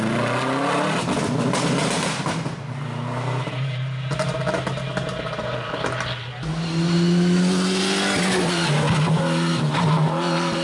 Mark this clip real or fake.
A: real